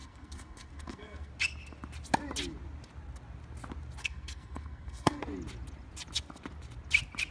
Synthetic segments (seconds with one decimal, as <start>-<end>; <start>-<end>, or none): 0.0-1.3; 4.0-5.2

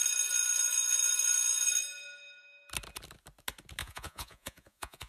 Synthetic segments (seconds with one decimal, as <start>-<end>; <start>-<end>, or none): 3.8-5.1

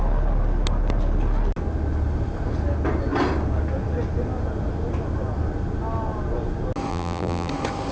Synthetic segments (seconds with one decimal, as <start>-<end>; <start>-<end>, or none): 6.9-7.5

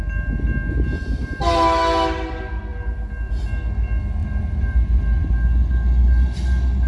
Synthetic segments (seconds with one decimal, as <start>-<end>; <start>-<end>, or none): 4.2-5.3

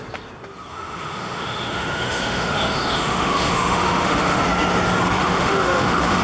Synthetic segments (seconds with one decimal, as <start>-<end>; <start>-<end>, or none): 0.7-4.4; 5.2-6.2